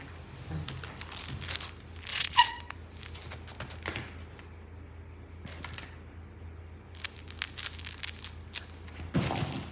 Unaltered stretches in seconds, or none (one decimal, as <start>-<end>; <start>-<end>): 0.0-2.1; 2.6-9.7